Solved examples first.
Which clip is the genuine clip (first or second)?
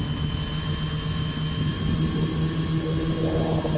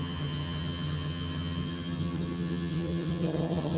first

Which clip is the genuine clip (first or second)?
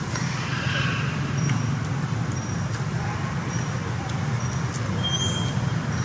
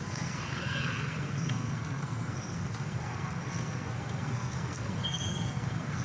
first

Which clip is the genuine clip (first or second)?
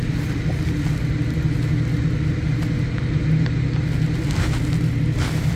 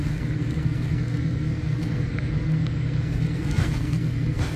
first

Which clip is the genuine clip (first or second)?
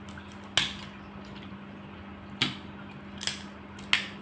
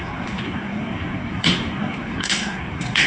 first